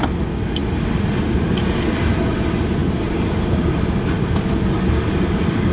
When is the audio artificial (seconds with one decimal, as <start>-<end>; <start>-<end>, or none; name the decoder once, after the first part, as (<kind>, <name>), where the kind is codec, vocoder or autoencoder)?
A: 2.8-3.6 (vocoder, BigVGAN v2)